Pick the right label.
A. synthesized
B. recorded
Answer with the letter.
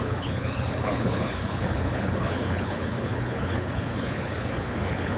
A